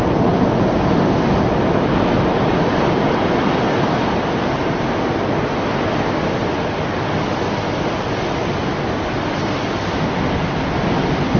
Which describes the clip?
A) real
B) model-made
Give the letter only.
A